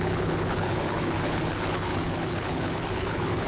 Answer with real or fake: fake